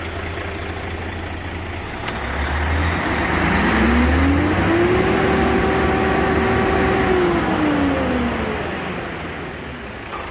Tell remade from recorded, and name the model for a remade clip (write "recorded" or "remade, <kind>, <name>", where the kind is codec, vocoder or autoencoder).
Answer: recorded